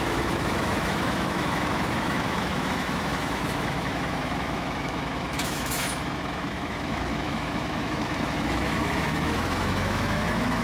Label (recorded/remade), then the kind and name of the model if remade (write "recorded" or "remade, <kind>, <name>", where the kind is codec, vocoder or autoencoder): remade, autoencoder, DAC-VAE